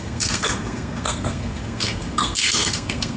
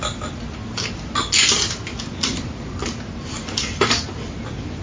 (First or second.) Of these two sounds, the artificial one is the first